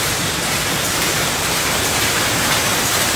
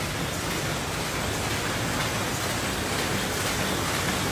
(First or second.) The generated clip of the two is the first